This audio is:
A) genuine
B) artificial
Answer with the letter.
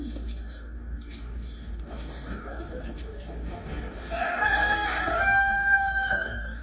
B